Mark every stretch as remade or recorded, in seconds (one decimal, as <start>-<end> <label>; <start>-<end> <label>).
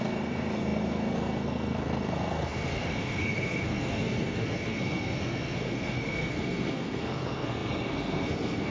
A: 0.0-8.7 remade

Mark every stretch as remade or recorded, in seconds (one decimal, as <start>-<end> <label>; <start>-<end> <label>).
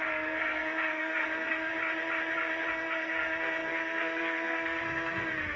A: 0.0-1.7 remade; 1.7-2.7 recorded; 2.7-5.6 remade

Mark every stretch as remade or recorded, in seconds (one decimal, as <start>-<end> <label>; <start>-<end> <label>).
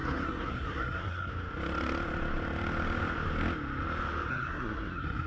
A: 0.0-1.3 remade; 1.3-4.3 recorded; 4.3-5.3 remade